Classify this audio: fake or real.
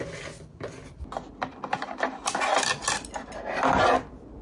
real